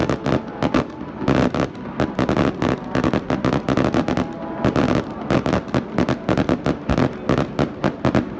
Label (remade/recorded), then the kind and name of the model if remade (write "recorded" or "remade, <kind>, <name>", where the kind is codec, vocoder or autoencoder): recorded